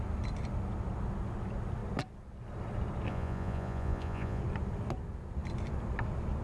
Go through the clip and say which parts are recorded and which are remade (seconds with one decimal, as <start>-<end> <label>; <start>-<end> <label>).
0.0-3.1 recorded; 3.1-4.4 remade; 4.4-6.4 recorded